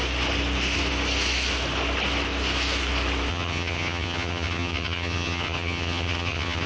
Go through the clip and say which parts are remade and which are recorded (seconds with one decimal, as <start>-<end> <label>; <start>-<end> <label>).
0.0-3.3 recorded; 3.3-6.7 remade